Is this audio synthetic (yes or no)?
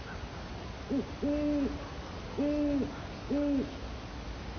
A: no